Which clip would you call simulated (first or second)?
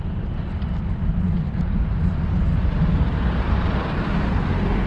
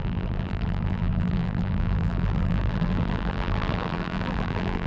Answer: second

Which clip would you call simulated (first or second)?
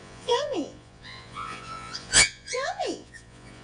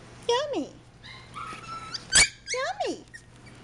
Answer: first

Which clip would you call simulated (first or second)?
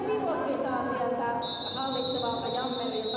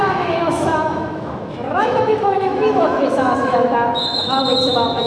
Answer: second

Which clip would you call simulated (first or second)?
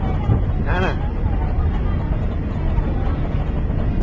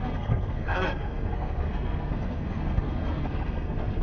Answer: second